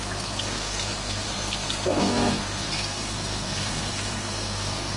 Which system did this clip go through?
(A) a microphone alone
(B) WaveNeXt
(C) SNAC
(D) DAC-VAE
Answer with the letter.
C